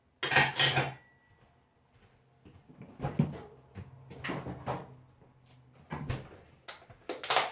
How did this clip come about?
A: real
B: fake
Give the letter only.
A